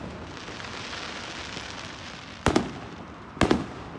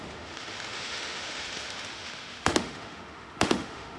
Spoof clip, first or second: second